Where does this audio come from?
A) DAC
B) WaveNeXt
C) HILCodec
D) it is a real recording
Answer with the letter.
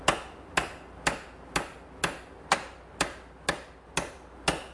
D